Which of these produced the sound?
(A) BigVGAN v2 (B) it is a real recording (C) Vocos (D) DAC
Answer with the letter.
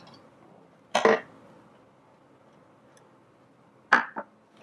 B